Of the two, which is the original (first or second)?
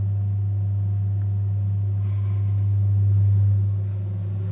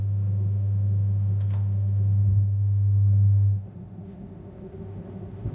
first